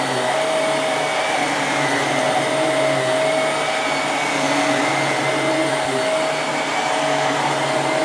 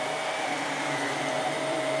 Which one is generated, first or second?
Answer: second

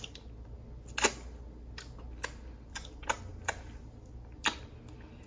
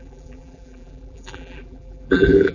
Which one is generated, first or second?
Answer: second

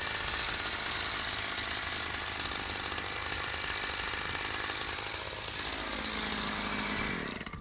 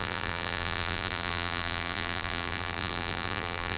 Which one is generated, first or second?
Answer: second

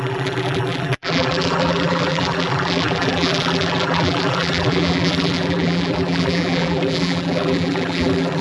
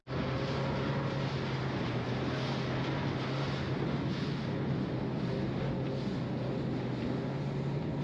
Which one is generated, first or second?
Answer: first